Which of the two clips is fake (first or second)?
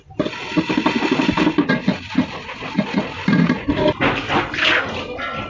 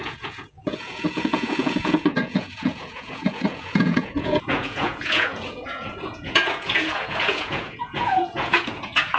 second